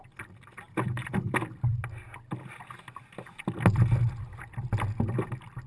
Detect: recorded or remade recorded